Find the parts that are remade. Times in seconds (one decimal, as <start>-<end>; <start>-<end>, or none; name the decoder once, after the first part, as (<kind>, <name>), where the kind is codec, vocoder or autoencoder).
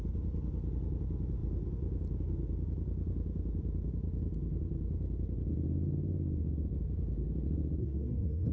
7.8-8.5 (codec, SNAC)